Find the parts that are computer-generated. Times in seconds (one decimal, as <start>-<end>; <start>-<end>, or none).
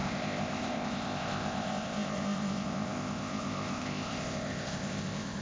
0.0-5.4